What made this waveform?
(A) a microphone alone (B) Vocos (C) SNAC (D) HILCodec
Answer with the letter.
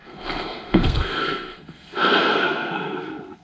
C